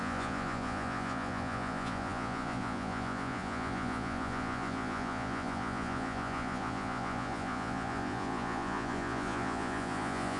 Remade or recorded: remade